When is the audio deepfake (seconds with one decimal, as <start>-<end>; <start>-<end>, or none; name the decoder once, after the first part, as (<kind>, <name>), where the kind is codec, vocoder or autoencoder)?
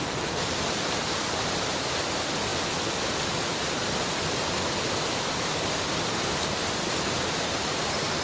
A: none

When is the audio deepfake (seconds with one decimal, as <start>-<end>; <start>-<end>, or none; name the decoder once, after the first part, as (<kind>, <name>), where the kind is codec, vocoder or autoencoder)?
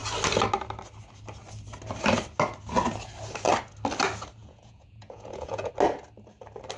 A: 4.4-5.7 (vocoder, Vocos)